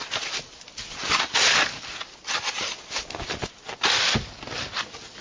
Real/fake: real